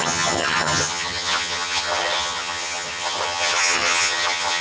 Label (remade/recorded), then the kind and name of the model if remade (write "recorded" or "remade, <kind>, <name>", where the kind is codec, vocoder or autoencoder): remade, vocoder, HiFi-GAN